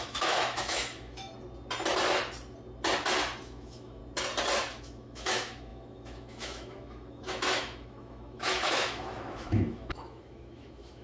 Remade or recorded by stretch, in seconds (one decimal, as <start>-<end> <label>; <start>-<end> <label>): 0.0-1.3 remade; 1.3-3.4 recorded; 3.4-4.0 remade; 4.0-4.7 recorded; 4.7-11.0 remade